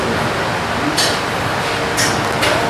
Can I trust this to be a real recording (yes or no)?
yes